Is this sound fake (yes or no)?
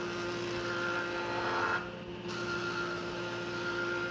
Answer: no